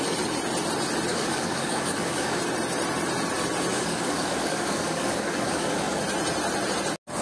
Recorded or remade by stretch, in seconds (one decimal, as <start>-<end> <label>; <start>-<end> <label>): 0.0-1.1 recorded; 1.1-2.4 remade; 2.4-3.7 recorded; 3.7-6.0 remade; 6.0-7.2 recorded